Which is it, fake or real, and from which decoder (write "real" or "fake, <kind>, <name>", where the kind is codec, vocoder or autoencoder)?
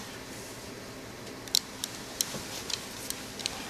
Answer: real